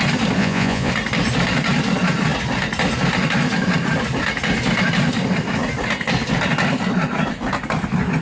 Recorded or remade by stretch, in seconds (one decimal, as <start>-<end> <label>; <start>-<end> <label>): 0.0-0.4 recorded; 0.4-0.9 remade; 0.9-8.2 recorded